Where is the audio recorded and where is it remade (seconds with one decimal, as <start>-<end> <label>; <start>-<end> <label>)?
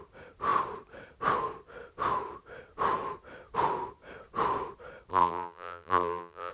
0.0-5.1 recorded; 5.1-6.5 remade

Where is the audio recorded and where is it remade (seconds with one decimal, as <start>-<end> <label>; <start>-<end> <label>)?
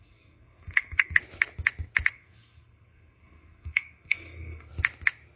0.0-1.2 remade; 1.2-2.1 recorded; 2.1-4.7 remade; 4.7-5.4 recorded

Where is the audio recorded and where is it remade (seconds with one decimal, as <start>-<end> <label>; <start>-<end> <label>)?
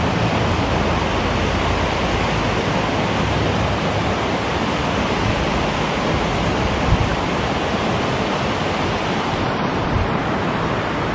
0.0-7.1 recorded; 7.1-7.9 remade; 7.9-11.1 recorded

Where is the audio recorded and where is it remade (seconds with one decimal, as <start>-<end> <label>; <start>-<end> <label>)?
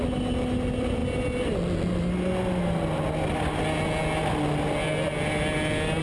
0.0-6.0 recorded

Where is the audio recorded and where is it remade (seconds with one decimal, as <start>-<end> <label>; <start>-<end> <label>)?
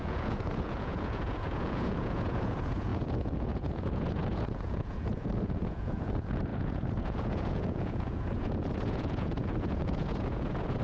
0.0-10.8 remade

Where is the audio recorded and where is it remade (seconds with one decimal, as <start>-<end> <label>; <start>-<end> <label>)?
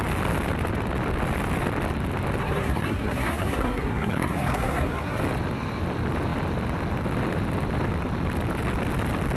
0.0-2.4 recorded; 2.4-5.2 remade; 5.2-9.4 recorded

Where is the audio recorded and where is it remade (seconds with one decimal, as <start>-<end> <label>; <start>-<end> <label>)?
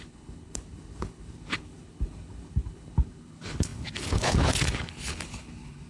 0.0-5.9 remade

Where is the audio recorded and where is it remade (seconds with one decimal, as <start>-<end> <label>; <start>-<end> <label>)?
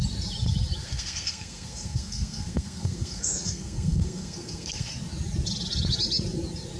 0.0-0.8 recorded; 0.8-4.9 remade; 4.9-6.8 recorded